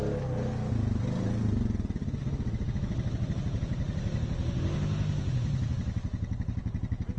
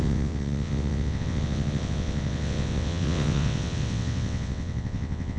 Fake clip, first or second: second